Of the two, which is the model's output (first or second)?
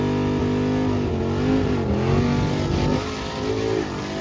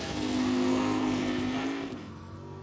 second